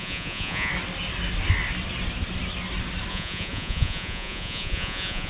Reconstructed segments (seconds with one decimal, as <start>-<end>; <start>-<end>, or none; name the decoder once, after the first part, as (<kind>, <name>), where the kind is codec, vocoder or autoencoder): 0.0-0.7 (vocoder, Vocos); 3.1-5.3